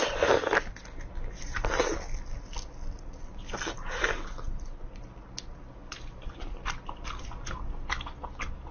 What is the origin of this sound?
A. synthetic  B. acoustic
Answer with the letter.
B